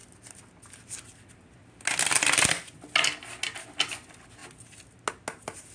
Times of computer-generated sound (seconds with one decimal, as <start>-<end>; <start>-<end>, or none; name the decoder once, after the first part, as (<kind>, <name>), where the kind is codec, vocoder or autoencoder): none

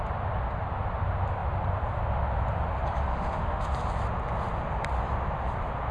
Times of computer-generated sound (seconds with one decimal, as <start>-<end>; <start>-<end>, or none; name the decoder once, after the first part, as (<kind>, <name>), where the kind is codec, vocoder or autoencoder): 3.1-3.7 (autoencoder, DAC-VAE)

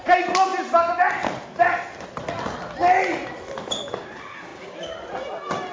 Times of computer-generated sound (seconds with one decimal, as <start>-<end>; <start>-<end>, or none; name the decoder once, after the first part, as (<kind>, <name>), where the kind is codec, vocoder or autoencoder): none

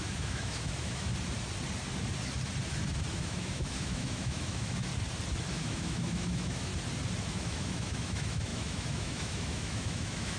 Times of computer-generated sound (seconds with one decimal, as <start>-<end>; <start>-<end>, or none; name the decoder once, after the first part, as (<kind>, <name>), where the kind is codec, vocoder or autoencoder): 0.0-1.1 (autoencoder, DAC-VAE); 3.1-4.9; 5.5-6.7; 7.2-10.4

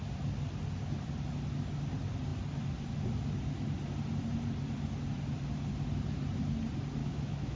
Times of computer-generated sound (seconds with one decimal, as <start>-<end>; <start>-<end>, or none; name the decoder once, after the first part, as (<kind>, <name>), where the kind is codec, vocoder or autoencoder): 7.0-7.6 (autoencoder, DAC-VAE)

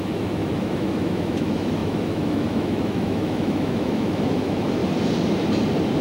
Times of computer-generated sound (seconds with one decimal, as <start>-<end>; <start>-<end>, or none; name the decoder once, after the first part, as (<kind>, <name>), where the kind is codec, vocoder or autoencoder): 0.0-4.8 (autoencoder, DAC-VAE)

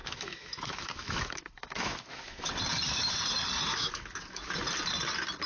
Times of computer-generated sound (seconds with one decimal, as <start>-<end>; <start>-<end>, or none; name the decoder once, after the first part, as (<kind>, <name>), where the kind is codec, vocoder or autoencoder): 0.0-2.5 (autoencoder, DAC-VAE); 3.7-4.5